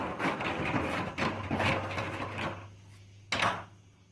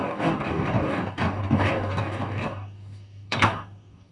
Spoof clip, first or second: second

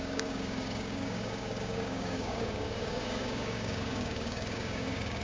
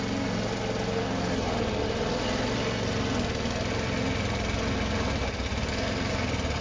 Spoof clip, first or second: first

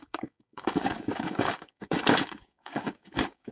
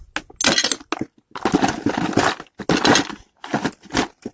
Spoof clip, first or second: first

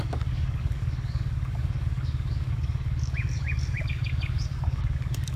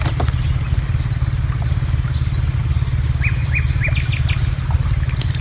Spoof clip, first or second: first